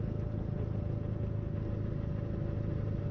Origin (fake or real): real